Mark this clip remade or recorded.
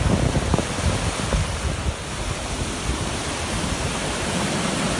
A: recorded